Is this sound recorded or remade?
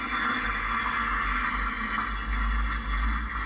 recorded